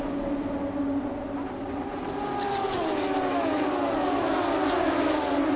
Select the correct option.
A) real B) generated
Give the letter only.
A